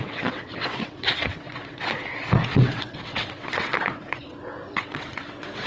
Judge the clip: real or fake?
fake